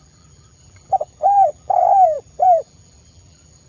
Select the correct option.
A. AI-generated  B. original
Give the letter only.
A